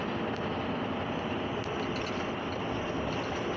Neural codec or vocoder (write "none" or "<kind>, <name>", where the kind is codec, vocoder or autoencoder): none